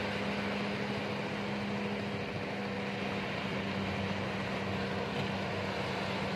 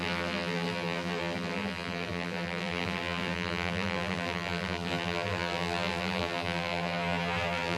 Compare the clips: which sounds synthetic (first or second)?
second